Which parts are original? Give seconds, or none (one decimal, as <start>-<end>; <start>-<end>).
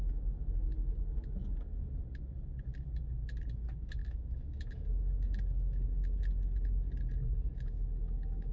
0.0-4.0; 6.2-7.2